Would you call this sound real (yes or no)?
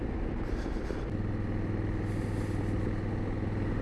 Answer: yes